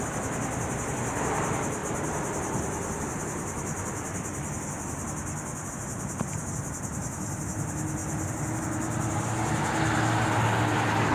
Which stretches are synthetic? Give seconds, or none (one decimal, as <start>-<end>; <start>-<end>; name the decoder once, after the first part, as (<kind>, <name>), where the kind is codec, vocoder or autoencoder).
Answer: none